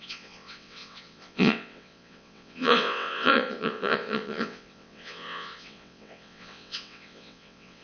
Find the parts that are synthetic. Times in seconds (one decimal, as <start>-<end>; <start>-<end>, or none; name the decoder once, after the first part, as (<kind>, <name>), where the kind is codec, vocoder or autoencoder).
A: 0.0-7.8 (vocoder, WaveNeXt)